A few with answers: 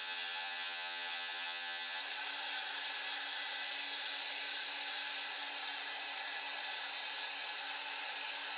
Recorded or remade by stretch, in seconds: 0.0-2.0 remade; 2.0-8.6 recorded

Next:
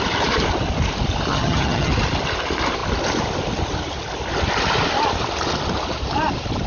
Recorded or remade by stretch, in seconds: 0.0-1.3 recorded; 1.3-1.9 remade; 1.9-6.7 recorded

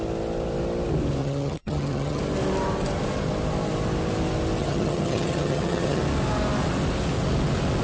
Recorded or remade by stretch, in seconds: 0.0-1.2 recorded; 1.2-2.2 remade; 2.2-4.6 recorded; 4.6-6.0 remade; 6.0-7.8 recorded

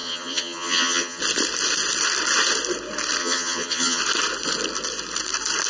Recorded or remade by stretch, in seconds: 0.0-1.2 remade; 1.2-3.2 recorded; 3.2-4.0 remade; 4.0-5.7 recorded

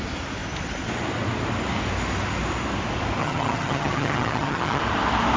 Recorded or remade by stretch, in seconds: 0.0-3.2 recorded; 3.2-4.8 remade; 4.8-5.4 recorded

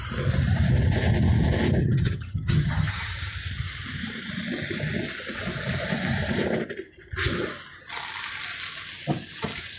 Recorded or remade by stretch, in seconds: 0.0-1.8 recorded; 1.8-3.1 remade; 3.1-9.8 recorded

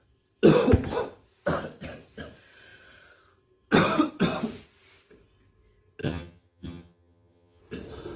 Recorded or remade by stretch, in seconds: 0.0-6.0 recorded; 6.0-7.6 remade; 7.6-8.2 recorded